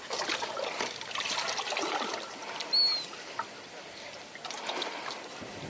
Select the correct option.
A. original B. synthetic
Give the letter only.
A